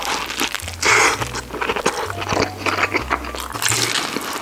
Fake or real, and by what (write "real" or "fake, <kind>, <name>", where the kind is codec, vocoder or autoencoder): real